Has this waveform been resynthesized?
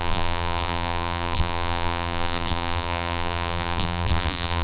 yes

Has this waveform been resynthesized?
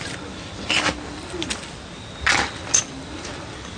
yes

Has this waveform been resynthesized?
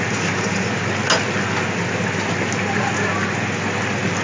no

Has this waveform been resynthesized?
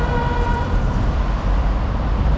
yes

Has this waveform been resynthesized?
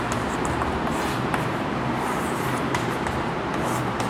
yes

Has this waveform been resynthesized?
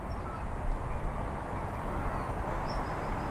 no